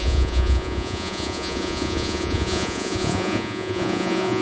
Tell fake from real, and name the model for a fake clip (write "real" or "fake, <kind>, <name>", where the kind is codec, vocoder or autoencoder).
fake, vocoder, Vocos